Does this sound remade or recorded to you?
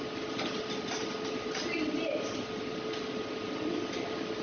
recorded